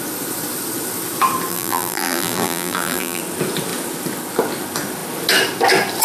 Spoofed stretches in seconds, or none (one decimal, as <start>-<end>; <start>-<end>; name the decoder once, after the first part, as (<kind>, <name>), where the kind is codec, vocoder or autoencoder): 1.5-3.2 (vocoder, BigVGAN v2)